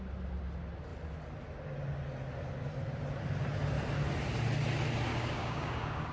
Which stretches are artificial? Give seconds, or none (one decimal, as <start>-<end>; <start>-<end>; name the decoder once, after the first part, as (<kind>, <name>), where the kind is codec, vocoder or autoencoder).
5.1-6.1 (codec, DAC)